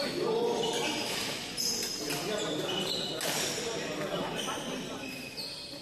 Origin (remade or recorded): recorded